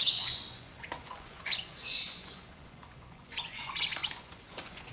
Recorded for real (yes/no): no